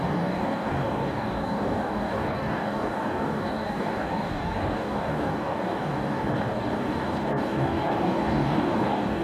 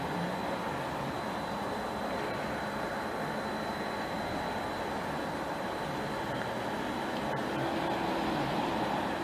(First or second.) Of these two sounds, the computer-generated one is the first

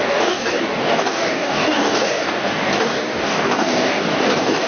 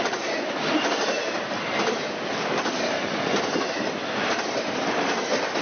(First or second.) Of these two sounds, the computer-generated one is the first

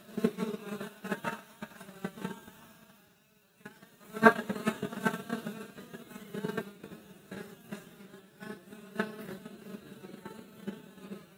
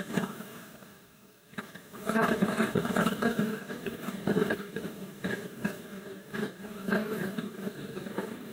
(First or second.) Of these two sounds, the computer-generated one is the second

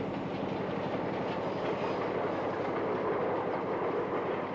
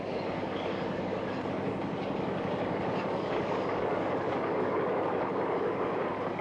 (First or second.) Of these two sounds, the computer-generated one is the second